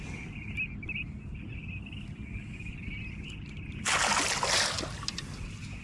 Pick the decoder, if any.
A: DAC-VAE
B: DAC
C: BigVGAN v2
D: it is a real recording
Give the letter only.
D